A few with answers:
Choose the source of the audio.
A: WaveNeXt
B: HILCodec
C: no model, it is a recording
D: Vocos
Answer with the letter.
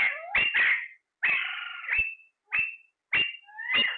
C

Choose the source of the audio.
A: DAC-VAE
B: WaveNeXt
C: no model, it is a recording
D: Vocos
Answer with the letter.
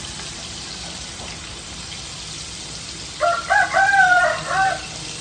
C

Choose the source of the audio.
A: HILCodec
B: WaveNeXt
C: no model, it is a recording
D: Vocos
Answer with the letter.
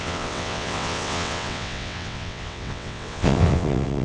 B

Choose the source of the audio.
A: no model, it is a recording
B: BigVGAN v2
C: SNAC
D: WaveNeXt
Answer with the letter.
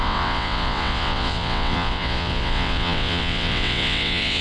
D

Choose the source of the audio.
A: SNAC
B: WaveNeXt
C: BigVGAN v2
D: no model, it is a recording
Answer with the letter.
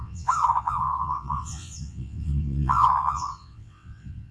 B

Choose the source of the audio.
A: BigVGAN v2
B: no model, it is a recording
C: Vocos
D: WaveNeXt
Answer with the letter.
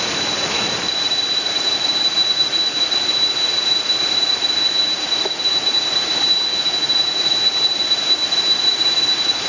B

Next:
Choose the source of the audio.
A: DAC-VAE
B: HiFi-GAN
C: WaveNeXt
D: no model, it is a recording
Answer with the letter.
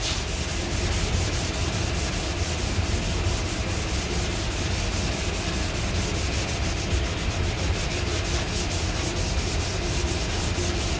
D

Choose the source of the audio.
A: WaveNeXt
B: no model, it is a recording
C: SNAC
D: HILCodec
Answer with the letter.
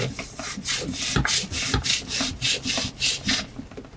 B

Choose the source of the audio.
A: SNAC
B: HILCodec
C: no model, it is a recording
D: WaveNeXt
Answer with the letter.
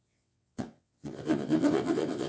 D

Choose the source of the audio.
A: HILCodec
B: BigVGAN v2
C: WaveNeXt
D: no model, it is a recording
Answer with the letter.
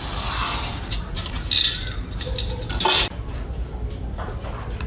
D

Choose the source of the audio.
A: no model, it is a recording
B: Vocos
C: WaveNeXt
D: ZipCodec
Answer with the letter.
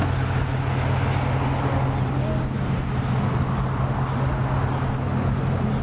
A